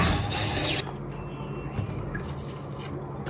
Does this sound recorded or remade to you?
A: recorded